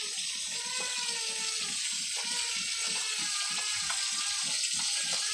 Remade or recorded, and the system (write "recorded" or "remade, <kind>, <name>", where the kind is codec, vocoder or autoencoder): recorded